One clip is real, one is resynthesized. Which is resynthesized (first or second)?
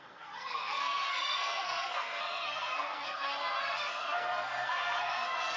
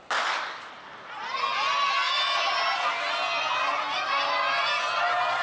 first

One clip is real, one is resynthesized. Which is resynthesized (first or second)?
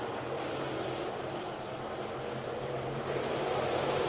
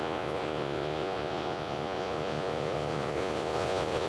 second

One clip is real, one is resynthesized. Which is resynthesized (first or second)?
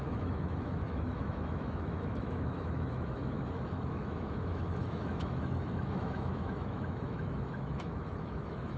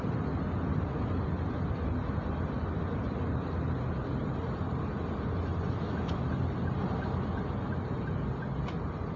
first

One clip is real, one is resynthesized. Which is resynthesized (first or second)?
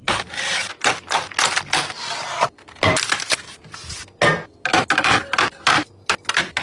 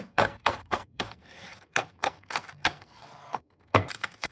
second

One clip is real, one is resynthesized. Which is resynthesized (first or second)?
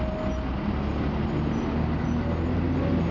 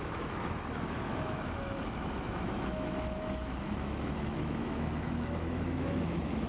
second